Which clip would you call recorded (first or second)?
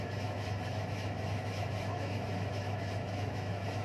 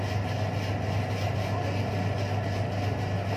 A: second